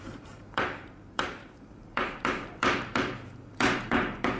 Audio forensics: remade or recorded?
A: remade